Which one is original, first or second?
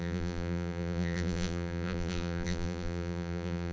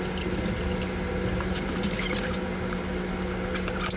second